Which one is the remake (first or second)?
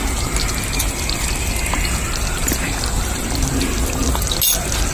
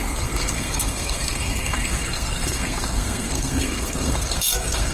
second